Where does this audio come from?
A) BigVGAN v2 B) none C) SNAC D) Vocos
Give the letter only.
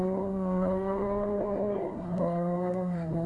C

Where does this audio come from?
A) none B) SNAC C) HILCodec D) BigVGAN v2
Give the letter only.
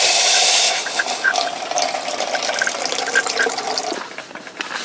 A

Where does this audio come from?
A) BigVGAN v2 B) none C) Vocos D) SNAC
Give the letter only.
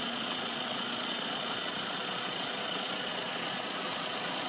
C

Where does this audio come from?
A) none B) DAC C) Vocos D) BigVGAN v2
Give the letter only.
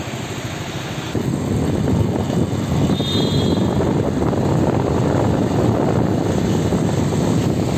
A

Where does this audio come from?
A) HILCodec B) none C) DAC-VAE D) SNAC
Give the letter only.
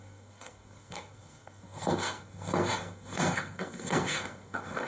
D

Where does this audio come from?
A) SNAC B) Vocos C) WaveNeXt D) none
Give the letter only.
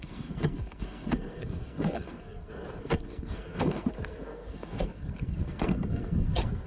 A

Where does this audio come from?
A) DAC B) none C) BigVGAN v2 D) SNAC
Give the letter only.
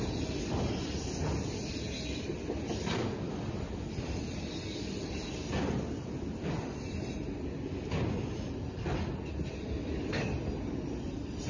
B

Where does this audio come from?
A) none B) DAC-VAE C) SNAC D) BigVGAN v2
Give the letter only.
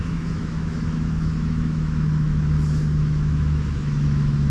B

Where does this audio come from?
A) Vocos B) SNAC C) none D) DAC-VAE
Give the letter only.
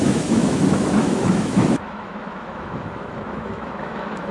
D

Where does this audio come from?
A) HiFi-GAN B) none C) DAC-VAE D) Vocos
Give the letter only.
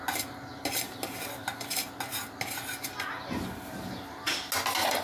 B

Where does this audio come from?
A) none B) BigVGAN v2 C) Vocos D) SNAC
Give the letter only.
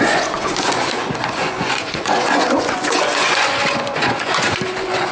C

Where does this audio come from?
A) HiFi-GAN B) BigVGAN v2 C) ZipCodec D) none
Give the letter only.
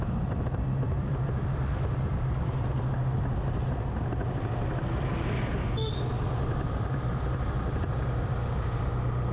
D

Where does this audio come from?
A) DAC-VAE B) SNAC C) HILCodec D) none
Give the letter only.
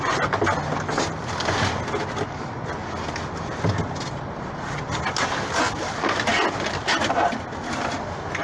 D